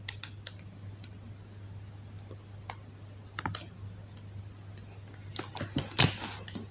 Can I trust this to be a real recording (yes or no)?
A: yes